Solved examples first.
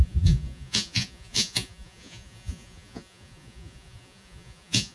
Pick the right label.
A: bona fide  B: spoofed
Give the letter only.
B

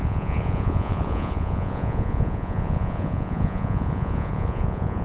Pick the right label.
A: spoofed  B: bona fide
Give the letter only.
A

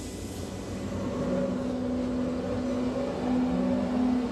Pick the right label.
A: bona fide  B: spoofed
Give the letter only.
A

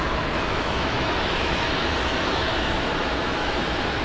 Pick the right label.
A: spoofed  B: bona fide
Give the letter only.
A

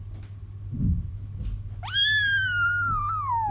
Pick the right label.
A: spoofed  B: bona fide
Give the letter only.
B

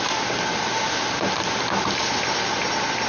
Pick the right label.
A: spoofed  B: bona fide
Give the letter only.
B